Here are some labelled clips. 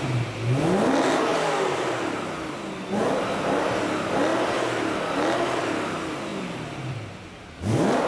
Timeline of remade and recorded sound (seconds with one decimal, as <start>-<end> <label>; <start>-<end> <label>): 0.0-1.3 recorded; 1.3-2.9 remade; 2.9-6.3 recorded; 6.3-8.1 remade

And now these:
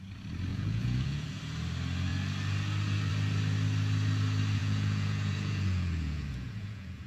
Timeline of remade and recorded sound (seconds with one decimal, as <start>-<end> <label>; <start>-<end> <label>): 0.0-0.5 recorded; 0.5-1.4 remade; 1.4-4.6 recorded; 4.6-7.1 remade

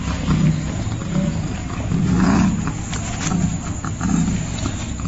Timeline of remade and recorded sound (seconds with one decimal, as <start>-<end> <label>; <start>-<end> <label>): 0.0-1.6 remade; 1.6-5.1 recorded